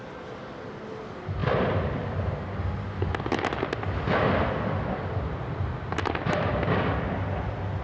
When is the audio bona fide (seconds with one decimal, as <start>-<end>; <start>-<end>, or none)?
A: 0.0-7.8